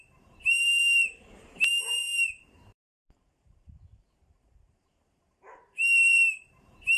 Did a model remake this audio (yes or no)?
yes